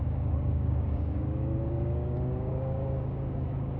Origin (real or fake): fake